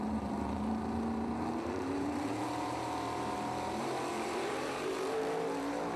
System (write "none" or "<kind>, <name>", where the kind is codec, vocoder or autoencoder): vocoder, BigVGAN v2